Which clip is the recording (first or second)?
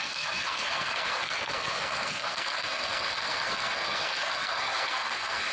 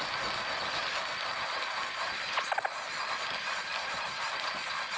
second